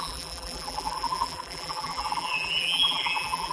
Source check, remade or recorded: remade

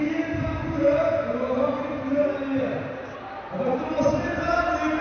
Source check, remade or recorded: remade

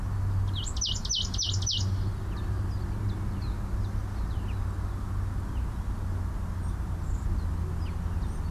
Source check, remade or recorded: recorded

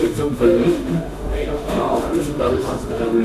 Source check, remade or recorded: remade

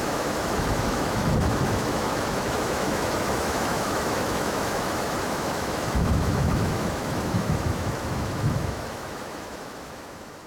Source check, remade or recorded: remade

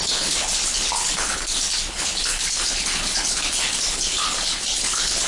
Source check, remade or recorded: remade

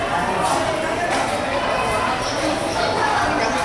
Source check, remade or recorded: recorded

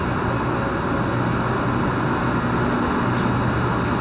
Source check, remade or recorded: recorded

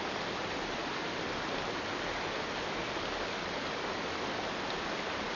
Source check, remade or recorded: recorded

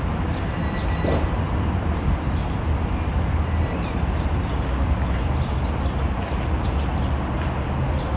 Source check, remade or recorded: recorded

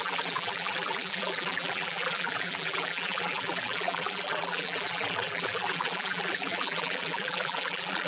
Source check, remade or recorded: remade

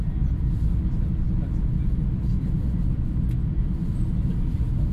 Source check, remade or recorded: recorded